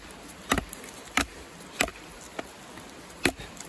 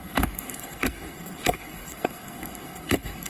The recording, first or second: first